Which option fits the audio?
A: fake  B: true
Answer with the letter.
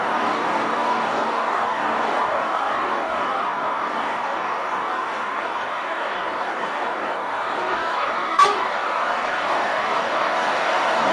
A